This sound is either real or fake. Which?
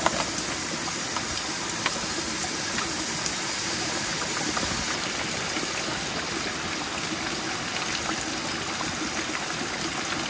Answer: real